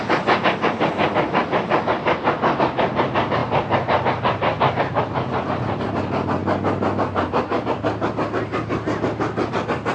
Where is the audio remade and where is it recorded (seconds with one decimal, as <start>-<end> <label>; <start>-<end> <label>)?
0.0-3.4 recorded; 3.4-5.9 remade; 5.9-9.9 recorded